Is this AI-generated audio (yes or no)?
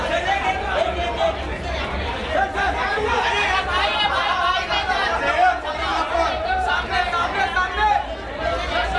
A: no